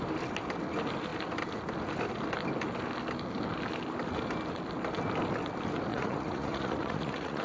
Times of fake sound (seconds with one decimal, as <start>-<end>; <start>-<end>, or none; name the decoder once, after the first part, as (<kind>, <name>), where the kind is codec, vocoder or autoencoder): 5.9-7.4 (vocoder, Vocos)